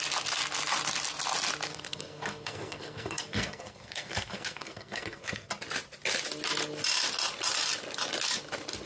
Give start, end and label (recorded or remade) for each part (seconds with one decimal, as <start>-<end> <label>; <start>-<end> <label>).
0.0-1.7 recorded; 1.7-5.5 remade; 5.5-8.9 recorded

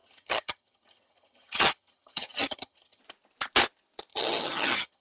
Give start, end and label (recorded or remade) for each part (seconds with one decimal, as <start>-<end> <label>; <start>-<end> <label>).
0.0-3.0 remade; 3.0-4.1 recorded; 4.1-5.0 remade

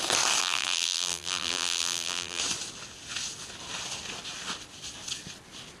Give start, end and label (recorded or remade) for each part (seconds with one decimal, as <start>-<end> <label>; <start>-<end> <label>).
0.0-0.4 recorded; 0.4-2.4 remade; 2.4-5.8 recorded

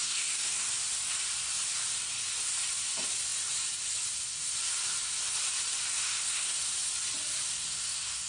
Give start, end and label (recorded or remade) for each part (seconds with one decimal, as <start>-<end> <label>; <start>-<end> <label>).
0.0-0.7 remade; 0.7-5.9 recorded; 5.9-6.6 remade; 6.6-7.5 recorded; 7.5-8.3 remade

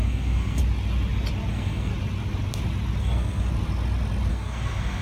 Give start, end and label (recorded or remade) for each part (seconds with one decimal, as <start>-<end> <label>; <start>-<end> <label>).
0.0-0.6 remade; 0.6-1.5 recorded; 1.5-1.9 remade; 1.9-3.0 recorded; 3.0-3.5 remade; 3.5-4.3 recorded; 4.3-5.0 remade

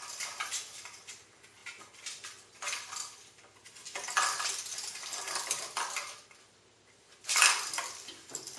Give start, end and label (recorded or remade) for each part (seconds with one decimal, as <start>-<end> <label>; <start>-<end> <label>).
0.0-8.6 recorded

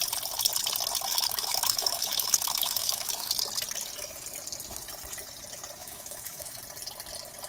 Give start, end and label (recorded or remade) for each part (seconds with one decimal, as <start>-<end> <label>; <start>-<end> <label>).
0.0-1.1 recorded; 1.1-3.3 remade; 3.3-5.8 recorded; 5.8-6.6 remade; 6.6-7.5 recorded